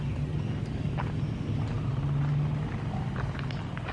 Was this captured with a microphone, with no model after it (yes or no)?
yes